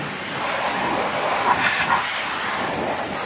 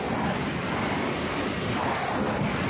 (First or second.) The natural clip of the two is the second